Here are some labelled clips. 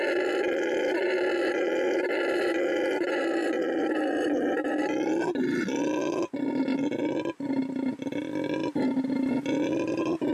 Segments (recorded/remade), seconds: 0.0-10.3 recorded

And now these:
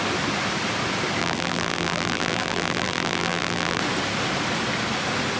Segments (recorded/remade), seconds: 0.0-1.2 recorded; 1.2-3.8 remade; 3.8-5.4 recorded

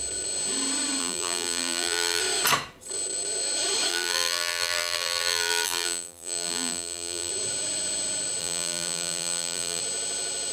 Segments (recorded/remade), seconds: 0.0-1.0 recorded; 1.0-2.2 remade; 2.2-3.9 recorded; 3.9-7.3 remade; 7.3-8.4 recorded; 8.4-9.8 remade; 9.8-10.5 recorded

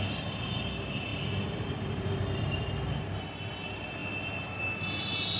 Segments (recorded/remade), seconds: 0.0-1.1 recorded; 1.1-3.0 remade; 3.0-5.4 recorded

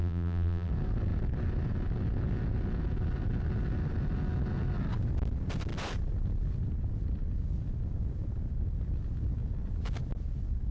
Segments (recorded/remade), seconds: 0.0-0.7 remade; 0.7-10.7 recorded